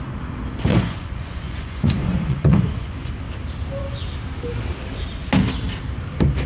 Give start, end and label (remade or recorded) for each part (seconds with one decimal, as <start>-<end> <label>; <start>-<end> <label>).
0.0-0.7 recorded; 0.7-3.1 remade; 3.1-6.5 recorded